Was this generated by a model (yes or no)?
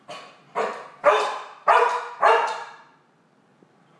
yes